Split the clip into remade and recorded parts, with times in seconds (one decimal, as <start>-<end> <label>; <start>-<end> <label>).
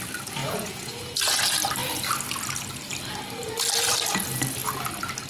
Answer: 0.0-0.4 recorded; 0.4-1.0 remade; 1.0-5.3 recorded